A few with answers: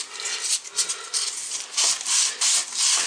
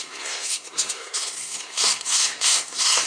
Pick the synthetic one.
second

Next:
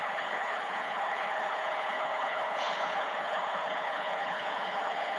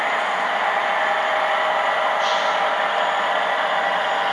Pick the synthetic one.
first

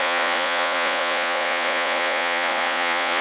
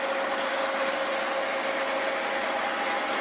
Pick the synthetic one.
first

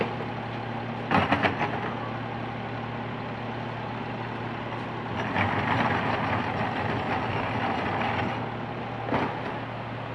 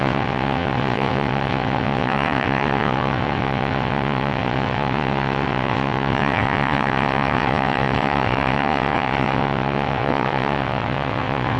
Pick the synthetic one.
second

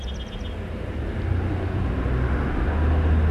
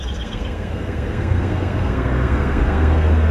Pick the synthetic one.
second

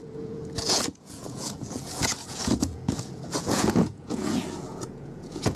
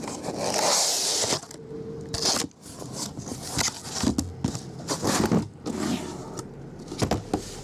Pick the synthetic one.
first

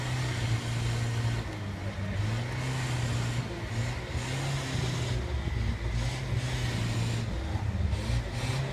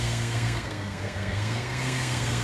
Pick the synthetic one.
second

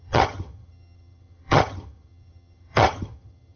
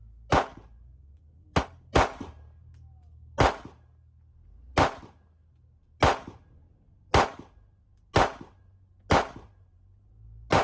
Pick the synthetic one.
first